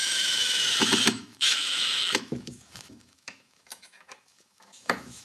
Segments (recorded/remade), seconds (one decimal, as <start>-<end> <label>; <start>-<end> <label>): 0.0-5.2 remade